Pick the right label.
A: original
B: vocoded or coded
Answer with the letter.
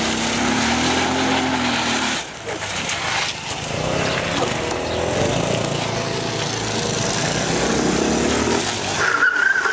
A